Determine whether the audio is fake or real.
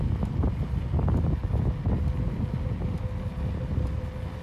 real